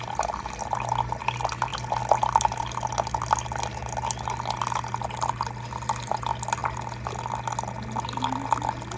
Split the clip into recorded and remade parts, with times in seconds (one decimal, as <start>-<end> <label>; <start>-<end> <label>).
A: 0.0-9.0 recorded